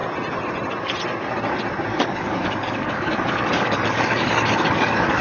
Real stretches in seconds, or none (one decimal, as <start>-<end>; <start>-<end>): 0.0-1.9